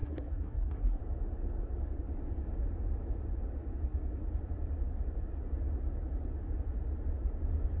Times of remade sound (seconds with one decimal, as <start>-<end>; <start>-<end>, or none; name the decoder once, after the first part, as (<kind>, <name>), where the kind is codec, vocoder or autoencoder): 0.0-1.0 (codec, SNAC)